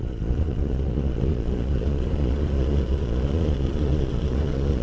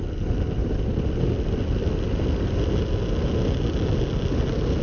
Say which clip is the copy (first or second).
first